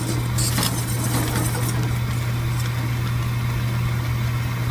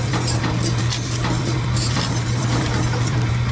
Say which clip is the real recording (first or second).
first